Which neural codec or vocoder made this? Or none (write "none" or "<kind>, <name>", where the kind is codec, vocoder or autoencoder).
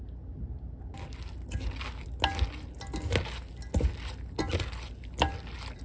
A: none